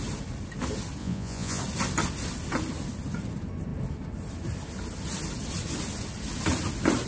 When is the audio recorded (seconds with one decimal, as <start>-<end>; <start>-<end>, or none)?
0.0-1.0; 1.6-7.1